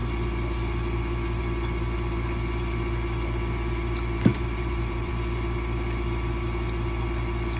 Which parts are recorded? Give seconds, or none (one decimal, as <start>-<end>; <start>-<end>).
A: 0.0-4.3; 5.1-7.6